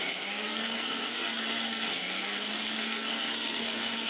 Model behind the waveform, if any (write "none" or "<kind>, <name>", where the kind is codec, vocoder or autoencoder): codec, SNAC